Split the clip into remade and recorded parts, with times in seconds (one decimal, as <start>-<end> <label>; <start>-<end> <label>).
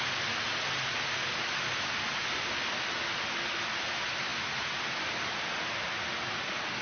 0.0-6.8 recorded